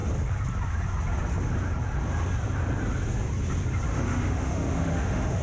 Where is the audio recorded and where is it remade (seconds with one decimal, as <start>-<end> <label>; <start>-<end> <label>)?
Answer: 0.0-3.9 recorded; 3.9-5.4 remade